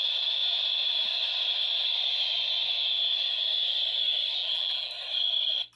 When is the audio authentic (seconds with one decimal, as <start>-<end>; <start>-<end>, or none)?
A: 0.0-4.4; 4.9-5.8